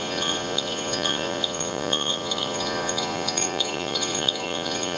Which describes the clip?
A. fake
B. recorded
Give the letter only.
A